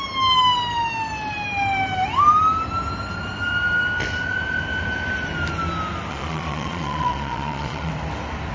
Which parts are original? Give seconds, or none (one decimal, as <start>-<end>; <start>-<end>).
0.0-6.1; 7.9-8.5